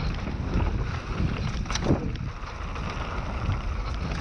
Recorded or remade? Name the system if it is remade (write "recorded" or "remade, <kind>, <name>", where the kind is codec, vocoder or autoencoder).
recorded